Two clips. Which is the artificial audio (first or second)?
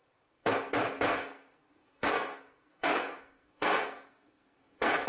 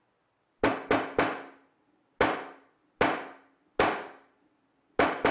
first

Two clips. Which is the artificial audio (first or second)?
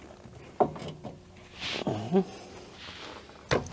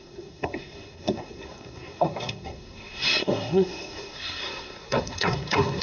second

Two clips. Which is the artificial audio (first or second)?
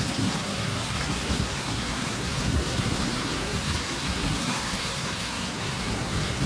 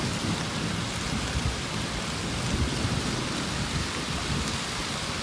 first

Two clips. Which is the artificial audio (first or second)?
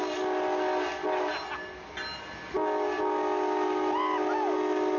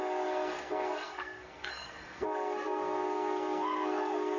second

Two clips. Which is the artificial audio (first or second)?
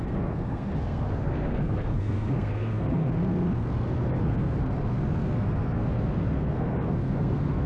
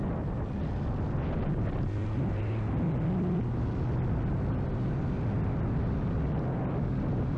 first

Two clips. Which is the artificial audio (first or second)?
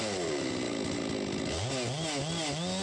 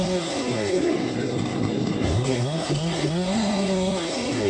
second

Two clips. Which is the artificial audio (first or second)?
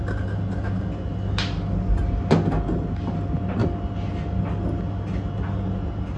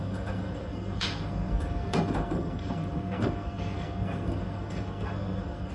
second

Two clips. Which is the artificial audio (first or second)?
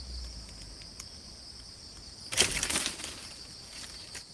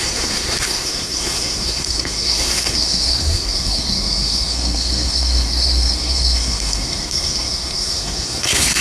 second